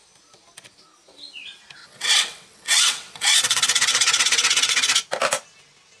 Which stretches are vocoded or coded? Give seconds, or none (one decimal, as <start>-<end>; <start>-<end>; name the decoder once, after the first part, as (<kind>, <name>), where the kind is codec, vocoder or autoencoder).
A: 1.8-4.7 (vocoder, WaveNeXt)